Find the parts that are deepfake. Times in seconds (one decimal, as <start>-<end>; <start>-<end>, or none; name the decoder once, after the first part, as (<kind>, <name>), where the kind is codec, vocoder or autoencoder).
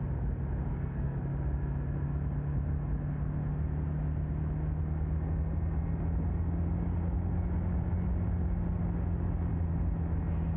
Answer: 0.7-1.2 (codec, SNAC)